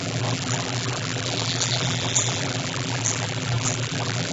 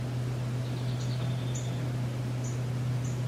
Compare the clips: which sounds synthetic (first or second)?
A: first